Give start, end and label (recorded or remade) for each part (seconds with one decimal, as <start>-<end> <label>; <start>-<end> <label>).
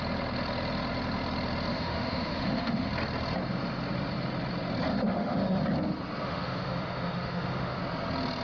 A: 0.0-1.7 recorded; 1.7-2.9 remade; 2.9-4.9 recorded; 4.9-5.6 remade; 5.6-6.2 recorded; 6.2-7.8 remade; 7.8-8.4 recorded